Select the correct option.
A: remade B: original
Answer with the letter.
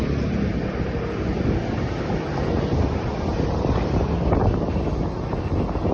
B